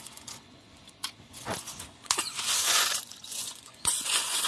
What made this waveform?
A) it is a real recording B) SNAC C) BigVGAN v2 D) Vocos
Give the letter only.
D